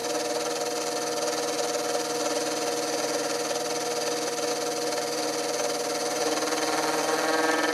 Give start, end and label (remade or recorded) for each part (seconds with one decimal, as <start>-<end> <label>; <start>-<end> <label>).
0.0-6.0 recorded; 6.0-7.2 remade; 7.2-7.7 recorded